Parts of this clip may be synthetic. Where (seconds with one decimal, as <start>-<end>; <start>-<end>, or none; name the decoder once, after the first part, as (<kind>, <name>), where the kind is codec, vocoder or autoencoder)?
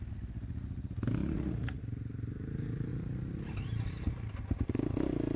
1.2-1.8 (vocoder, Vocos)